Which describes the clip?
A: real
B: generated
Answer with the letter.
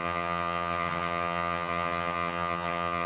B